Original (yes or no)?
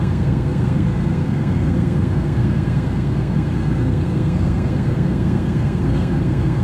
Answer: no